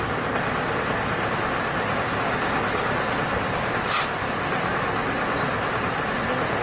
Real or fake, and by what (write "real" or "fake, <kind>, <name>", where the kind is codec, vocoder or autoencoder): real